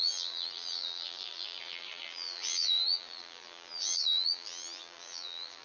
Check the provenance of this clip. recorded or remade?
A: remade